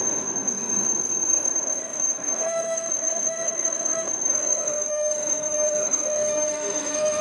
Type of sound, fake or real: fake